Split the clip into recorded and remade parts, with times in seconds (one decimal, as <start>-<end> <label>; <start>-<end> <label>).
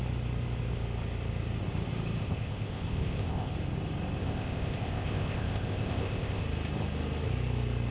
0.0-2.2 recorded; 2.2-3.5 remade; 3.5-4.2 recorded; 4.2-6.4 remade; 6.4-7.9 recorded